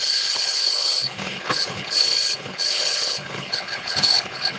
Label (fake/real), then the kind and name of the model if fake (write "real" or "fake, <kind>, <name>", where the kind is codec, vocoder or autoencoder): fake, codec, HILCodec